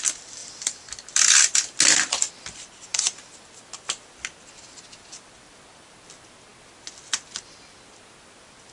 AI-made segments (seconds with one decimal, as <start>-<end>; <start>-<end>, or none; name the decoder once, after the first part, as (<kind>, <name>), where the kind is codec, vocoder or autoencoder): none